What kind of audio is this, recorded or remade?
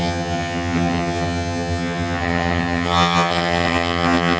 remade